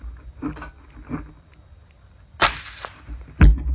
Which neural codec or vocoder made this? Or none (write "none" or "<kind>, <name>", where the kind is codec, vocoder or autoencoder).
none